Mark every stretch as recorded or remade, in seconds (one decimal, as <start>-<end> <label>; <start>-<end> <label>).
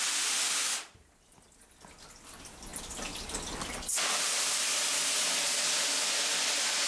0.0-6.9 recorded